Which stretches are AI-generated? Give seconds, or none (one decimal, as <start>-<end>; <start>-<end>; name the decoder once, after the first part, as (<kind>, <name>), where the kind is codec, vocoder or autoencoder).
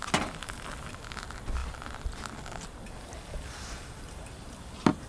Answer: none